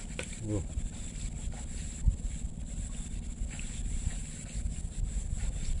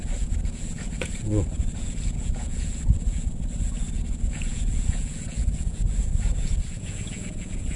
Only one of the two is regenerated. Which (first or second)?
second